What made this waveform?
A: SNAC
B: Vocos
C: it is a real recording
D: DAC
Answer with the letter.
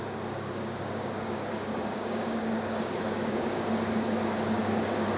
D